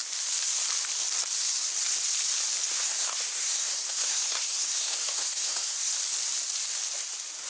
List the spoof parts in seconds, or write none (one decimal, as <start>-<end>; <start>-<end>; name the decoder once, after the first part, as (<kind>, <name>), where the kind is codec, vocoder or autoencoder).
2.7-5.9 (codec, SNAC)